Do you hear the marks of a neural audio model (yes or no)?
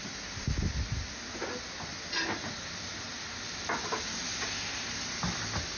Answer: no